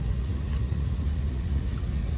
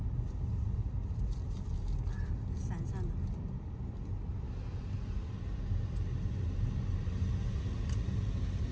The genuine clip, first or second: second